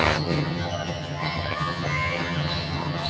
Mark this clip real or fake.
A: fake